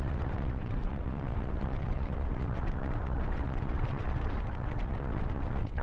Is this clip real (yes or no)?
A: no